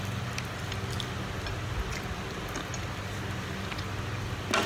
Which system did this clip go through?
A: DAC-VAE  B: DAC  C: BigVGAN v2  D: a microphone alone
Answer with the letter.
D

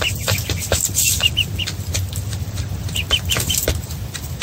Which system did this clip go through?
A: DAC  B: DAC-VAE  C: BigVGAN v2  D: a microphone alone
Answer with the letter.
D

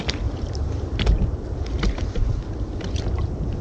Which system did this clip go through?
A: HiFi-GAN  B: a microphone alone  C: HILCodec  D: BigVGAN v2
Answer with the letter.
B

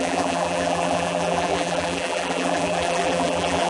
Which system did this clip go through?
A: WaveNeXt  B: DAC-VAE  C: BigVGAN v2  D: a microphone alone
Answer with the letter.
C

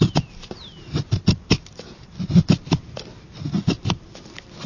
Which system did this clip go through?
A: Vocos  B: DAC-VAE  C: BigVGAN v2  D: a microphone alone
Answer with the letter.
C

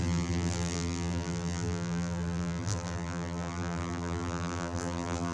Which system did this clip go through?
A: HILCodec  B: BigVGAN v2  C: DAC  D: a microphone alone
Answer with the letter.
B